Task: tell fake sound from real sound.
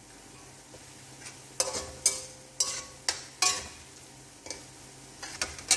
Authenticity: real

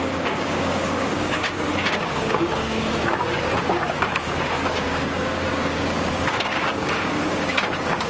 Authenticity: fake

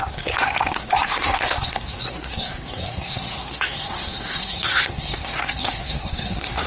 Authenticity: fake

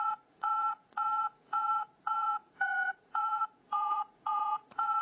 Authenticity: fake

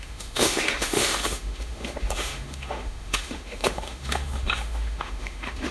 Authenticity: fake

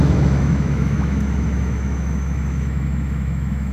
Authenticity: fake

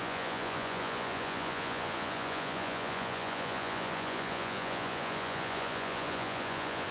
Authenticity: fake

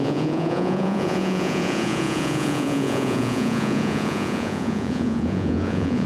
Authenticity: fake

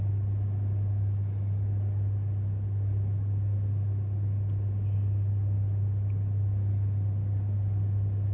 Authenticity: real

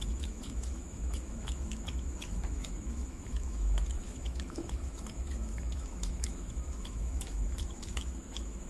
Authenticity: fake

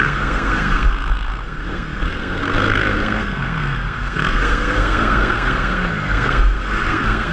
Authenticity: fake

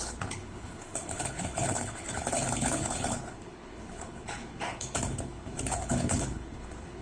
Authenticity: fake